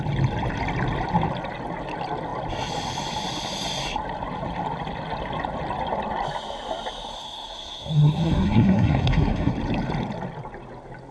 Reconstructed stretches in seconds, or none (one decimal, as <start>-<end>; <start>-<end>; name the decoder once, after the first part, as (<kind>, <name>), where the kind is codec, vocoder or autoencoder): 7.1-9.5 (codec, SNAC)